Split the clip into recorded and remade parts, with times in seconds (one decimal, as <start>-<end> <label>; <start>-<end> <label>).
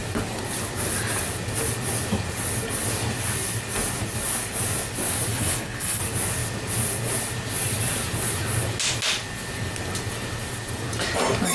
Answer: 0.0-5.3 recorded; 5.3-6.0 remade; 6.0-11.5 recorded